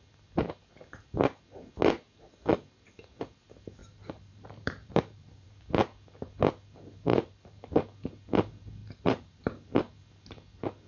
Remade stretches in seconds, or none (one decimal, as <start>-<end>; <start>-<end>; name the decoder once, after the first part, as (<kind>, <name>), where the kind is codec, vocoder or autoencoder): 3.8-5.5 (vocoder, BigVGAN v2); 7.1-7.7; 8.8-9.4